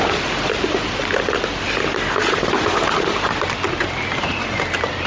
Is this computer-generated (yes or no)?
no